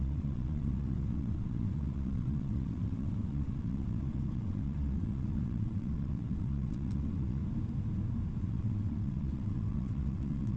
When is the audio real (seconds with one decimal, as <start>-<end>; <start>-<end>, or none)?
7.4-8.4